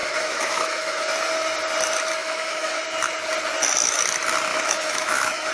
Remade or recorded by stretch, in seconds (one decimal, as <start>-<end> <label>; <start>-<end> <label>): 0.0-1.1 remade; 1.1-2.2 recorded; 2.2-2.8 remade; 2.8-4.5 recorded; 4.5-5.5 remade